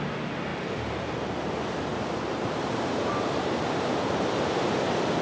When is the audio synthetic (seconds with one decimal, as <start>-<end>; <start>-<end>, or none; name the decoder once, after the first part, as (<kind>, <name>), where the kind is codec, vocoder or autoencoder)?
0.5-1.2 (vocoder, BigVGAN v2); 1.9-5.2